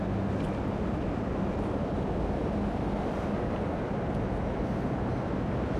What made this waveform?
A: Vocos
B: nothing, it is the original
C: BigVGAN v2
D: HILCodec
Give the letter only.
B